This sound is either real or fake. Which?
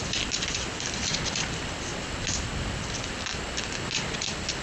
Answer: real